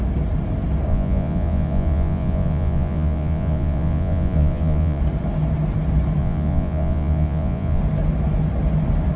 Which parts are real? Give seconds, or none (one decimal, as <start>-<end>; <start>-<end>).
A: 0.0-0.9; 5.0-6.2; 7.8-9.2